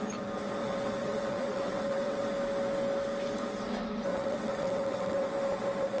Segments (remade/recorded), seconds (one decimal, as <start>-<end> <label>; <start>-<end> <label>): 0.0-0.6 recorded; 0.6-2.2 remade; 2.2-4.1 recorded; 4.1-5.3 remade; 5.3-6.0 recorded